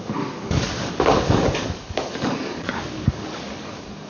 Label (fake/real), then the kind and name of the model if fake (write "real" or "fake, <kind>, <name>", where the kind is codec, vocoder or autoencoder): fake, codec, DAC